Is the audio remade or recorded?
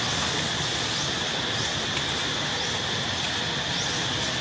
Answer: recorded